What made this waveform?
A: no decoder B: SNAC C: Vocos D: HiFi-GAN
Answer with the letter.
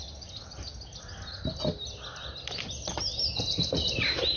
A